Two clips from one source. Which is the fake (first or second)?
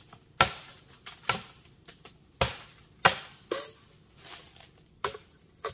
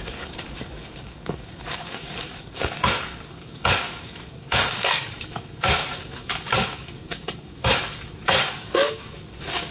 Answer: second